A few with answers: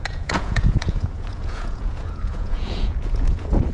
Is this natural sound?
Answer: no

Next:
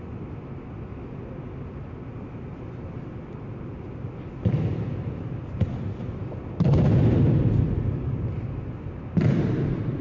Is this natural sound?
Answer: yes